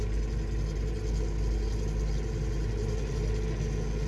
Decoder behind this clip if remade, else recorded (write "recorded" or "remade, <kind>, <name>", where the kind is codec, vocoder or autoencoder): recorded